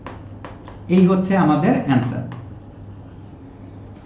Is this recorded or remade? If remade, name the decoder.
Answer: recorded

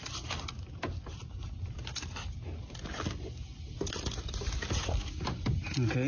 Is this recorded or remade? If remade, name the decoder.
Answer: recorded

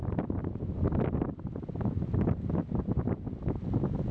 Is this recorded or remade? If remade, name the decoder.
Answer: recorded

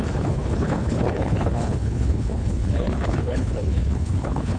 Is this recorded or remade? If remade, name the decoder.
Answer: remade, codec, HILCodec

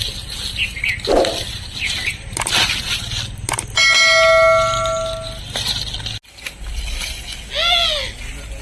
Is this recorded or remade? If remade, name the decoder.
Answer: recorded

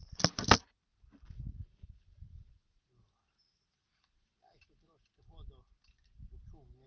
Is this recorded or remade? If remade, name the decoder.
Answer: recorded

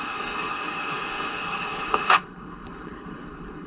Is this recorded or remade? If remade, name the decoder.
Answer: remade, codec, HILCodec